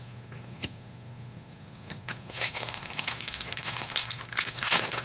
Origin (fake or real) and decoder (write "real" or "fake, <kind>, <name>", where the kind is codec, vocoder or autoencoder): fake, codec, SNAC